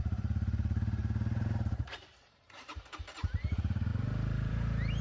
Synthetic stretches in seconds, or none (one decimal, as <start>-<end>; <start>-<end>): 0.0-1.0; 1.8-3.9; 4.5-5.0